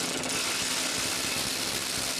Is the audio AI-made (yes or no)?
no